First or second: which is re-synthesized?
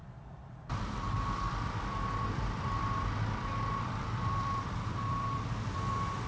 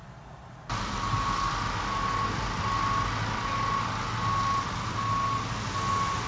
first